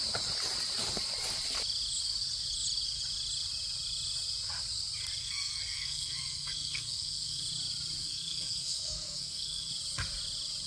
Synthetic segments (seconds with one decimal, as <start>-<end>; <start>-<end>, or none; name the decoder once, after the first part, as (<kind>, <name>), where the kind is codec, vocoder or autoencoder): 5.2-7.4 (codec, SNAC); 8.0-9.7